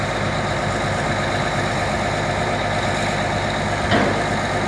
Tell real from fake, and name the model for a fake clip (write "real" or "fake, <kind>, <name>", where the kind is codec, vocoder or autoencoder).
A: real